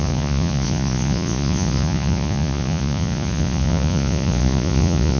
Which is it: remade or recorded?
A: remade